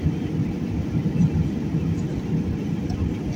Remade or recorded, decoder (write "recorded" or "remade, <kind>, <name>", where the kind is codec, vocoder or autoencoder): recorded